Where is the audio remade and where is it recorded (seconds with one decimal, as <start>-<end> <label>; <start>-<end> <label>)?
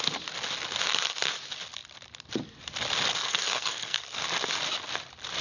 0.0-3.1 recorded; 3.1-4.2 remade; 4.2-5.4 recorded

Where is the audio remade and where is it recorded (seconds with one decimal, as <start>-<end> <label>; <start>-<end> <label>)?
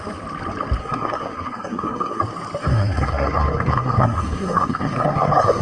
0.0-0.8 recorded; 0.8-2.2 remade; 2.2-2.7 recorded; 2.7-5.6 remade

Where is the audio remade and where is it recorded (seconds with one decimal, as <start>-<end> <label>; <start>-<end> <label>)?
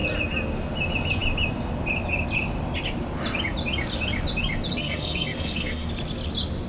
0.0-4.7 recorded; 4.7-5.9 remade; 5.9-6.7 recorded